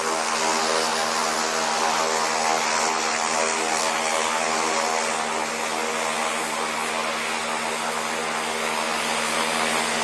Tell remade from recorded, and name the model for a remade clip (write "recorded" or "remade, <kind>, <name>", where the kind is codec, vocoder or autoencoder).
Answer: recorded